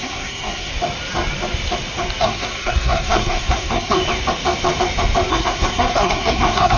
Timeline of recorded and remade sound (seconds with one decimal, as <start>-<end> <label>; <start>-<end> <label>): 0.0-0.7 remade; 0.7-2.2 recorded; 2.2-4.0 remade; 4.0-5.3 recorded; 5.3-6.8 remade